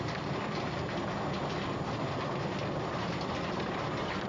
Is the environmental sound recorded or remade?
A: recorded